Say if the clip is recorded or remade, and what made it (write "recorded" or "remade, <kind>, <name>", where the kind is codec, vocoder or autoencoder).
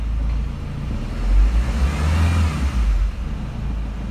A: recorded